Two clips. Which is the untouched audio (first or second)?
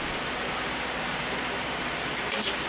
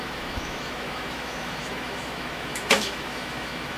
first